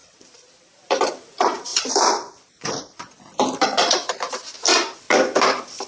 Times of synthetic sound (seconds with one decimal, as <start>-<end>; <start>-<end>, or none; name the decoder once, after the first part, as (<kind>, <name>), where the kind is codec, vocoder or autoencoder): 0.0-1.1 (vocoder, BigVGAN v2); 1.7-3.2; 4.7-5.4